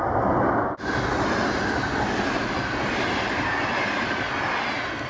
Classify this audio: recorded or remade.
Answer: recorded